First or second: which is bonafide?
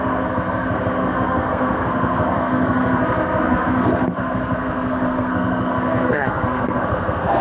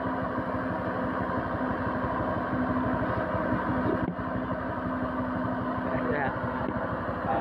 second